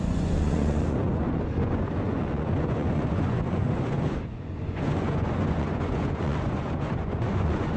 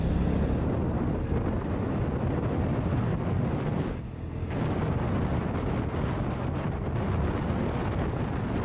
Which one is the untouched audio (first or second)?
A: second